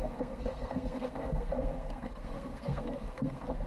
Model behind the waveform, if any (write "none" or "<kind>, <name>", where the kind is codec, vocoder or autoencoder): codec, SNAC